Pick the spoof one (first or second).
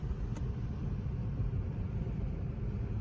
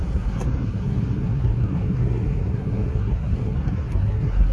second